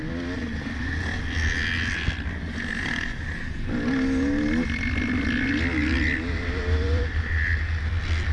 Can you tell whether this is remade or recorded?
recorded